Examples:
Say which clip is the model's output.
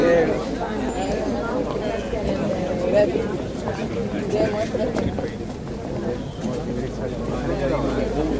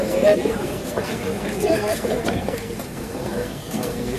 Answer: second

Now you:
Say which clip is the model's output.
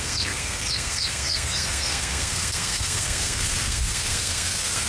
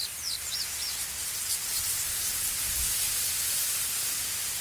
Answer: first